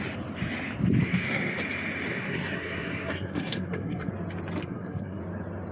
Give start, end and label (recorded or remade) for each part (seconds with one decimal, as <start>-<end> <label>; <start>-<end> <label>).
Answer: 0.0-1.0 recorded; 1.0-1.6 remade; 1.6-2.1 recorded; 2.1-4.1 remade; 4.1-4.6 recorded; 4.6-5.2 remade; 5.2-5.7 recorded